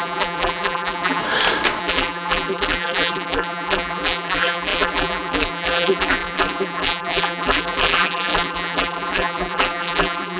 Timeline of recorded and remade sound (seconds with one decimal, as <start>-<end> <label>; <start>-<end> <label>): 0.0-1.2 remade; 1.2-1.8 recorded; 1.8-10.4 remade